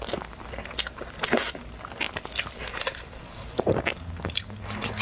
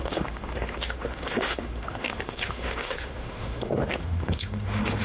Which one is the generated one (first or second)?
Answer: second